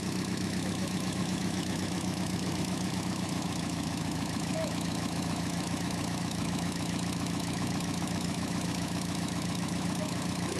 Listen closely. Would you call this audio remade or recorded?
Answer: remade